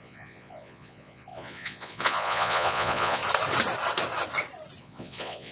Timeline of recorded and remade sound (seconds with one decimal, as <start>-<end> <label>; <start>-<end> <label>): 0.0-3.2 remade; 3.2-4.8 recorded; 4.8-5.5 remade